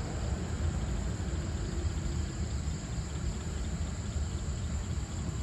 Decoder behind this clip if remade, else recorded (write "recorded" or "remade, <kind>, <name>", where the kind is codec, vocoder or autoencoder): remade, vocoder, BigVGAN v2